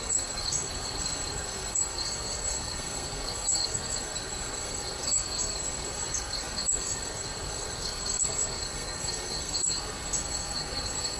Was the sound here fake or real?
fake